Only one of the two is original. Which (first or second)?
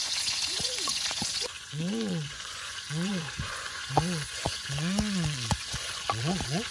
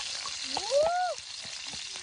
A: second